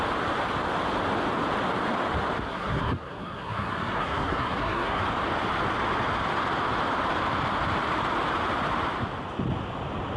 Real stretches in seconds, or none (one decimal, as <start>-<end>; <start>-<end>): 0.0-2.5; 5.0-10.2